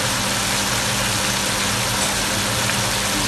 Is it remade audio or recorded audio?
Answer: recorded